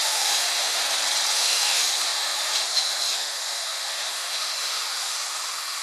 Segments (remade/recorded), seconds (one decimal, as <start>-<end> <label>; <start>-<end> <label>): 0.0-0.8 remade; 0.8-1.3 recorded; 1.3-5.8 remade